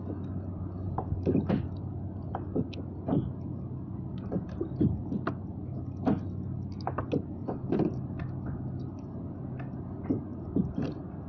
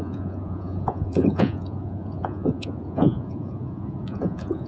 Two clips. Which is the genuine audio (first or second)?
first